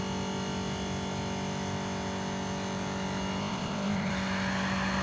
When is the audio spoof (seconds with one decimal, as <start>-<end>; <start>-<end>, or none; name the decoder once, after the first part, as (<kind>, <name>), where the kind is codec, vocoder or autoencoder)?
3.4-4.1 (codec, ZipCodec)